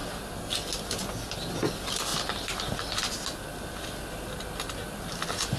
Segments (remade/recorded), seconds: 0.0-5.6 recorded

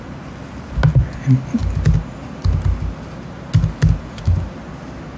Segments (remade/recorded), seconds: 0.0-5.2 recorded

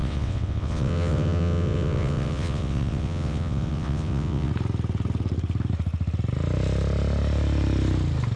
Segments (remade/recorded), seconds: 0.0-4.5 remade; 4.5-8.4 recorded

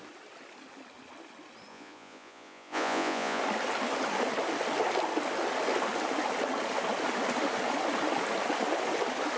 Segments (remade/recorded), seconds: 0.0-1.7 recorded; 1.7-3.4 remade; 3.4-9.4 recorded

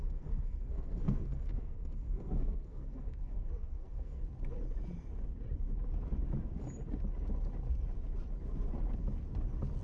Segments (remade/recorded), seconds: 0.0-4.2 remade; 4.2-9.8 recorded

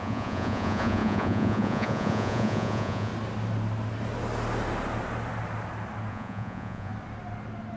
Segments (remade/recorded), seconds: 0.0-3.1 remade; 3.1-6.1 recorded; 6.1-6.9 remade; 6.9-7.8 recorded

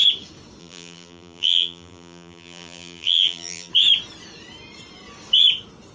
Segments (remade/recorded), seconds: 0.0-0.6 recorded; 0.6-3.7 remade; 3.7-5.9 recorded